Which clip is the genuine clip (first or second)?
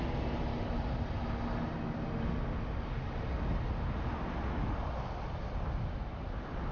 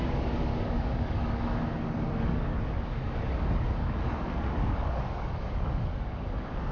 first